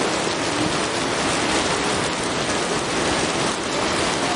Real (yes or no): yes